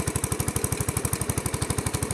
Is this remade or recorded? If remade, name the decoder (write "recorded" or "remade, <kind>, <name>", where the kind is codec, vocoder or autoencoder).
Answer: recorded